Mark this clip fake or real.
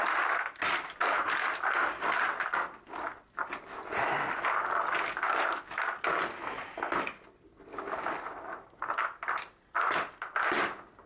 real